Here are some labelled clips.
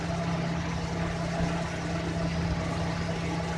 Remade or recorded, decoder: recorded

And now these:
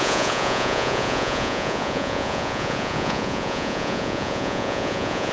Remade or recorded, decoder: remade, vocoder, Vocos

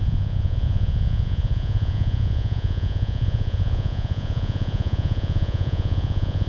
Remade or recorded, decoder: remade, vocoder, Vocos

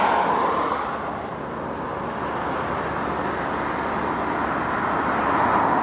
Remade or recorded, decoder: recorded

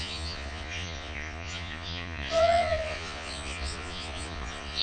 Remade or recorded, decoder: remade, vocoder, Vocos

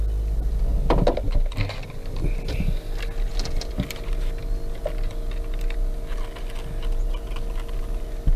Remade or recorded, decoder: recorded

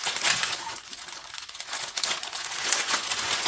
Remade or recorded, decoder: remade, vocoder, Vocos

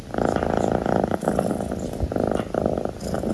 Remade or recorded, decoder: recorded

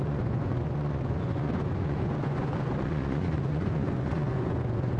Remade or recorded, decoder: remade, vocoder, Vocos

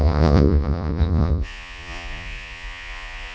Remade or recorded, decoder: remade, vocoder, Vocos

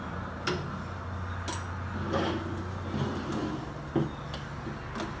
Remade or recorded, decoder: recorded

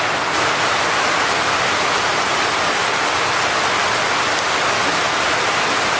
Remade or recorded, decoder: recorded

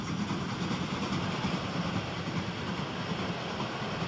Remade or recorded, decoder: recorded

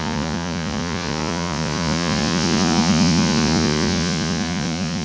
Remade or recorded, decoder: remade, vocoder, Vocos